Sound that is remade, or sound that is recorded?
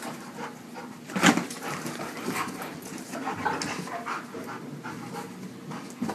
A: recorded